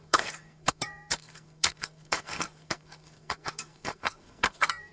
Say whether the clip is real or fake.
fake